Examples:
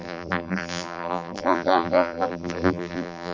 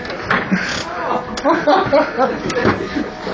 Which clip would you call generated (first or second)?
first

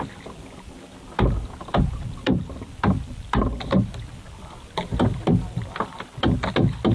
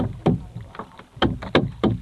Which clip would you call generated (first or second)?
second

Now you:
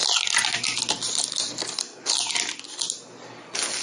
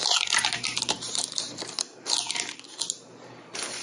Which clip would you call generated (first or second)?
second